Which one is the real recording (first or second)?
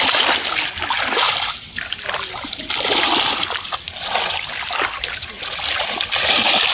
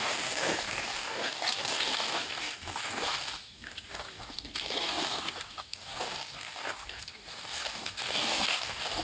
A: first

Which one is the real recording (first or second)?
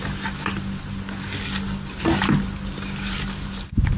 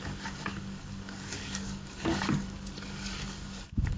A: first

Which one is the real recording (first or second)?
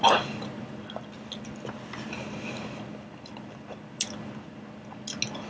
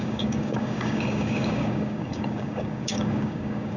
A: first